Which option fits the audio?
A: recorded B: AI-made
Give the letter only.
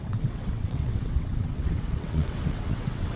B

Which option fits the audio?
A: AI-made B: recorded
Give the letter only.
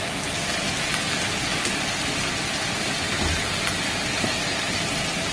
B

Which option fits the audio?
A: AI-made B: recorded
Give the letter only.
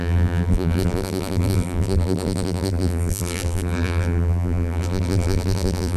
A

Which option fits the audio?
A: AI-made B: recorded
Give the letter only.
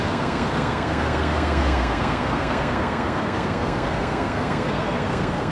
A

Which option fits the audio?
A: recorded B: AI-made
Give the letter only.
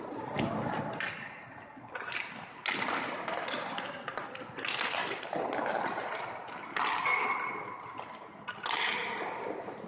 A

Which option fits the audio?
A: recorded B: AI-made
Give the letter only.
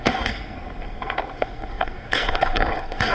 B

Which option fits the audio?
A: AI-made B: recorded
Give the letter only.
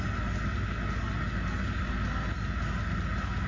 B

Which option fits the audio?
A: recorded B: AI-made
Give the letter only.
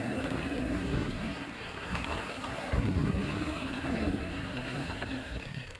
B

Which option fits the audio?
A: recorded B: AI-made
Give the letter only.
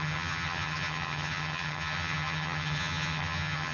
B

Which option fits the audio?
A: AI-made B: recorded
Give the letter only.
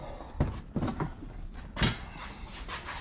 B